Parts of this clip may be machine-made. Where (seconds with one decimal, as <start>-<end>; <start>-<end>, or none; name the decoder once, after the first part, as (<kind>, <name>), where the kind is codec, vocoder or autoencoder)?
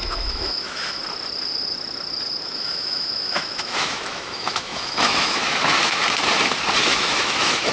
0.0-1.0 (autoencoder, DAC-VAE); 2.4-6.0; 6.8-7.7